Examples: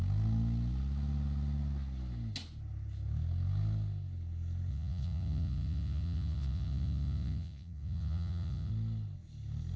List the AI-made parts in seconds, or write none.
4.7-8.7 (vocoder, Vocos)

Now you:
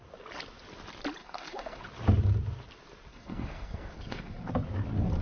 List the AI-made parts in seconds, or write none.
1.2-1.8 (codec, SNAC); 3.1-4.5

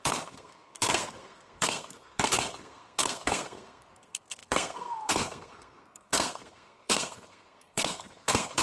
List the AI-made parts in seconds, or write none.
0.0-8.6 (codec, SNAC)

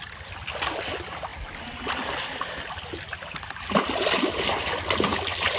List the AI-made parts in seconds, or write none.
none

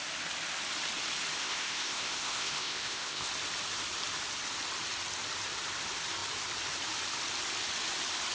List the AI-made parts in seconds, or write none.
1.4-3.3 (codec, ZipCodec)

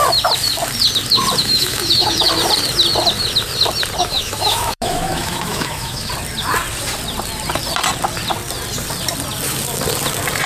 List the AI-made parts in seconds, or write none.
1.4-2.3 (autoencoder, DAC-VAE); 4.0-6.1

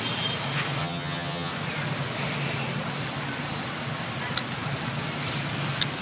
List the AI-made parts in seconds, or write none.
0.8-1.5 (vocoder, HiFi-GAN)